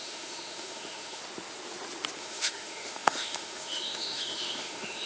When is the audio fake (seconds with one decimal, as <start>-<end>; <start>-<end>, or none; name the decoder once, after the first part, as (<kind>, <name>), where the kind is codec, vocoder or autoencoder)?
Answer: 0.0-1.2 (autoencoder, DAC-VAE); 2.2-5.1